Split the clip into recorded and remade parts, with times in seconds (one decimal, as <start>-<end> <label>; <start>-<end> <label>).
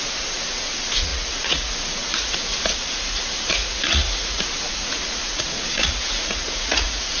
0.0-7.2 remade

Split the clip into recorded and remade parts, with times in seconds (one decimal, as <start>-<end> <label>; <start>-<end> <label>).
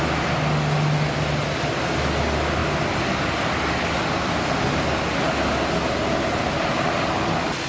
0.0-7.7 recorded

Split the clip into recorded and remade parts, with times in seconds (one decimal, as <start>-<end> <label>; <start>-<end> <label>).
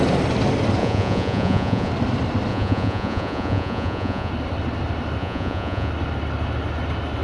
0.0-0.8 recorded; 0.8-1.9 remade; 1.9-2.5 recorded; 2.5-4.3 remade; 4.3-5.2 recorded; 5.2-5.9 remade; 5.9-7.2 recorded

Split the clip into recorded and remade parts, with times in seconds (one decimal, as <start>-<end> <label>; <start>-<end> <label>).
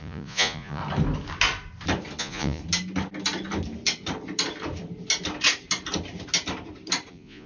0.0-0.8 remade; 0.8-2.2 recorded; 2.2-2.6 remade; 2.6-7.1 recorded; 7.1-7.5 remade